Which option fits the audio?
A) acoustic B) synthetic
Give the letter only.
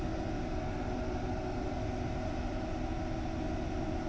A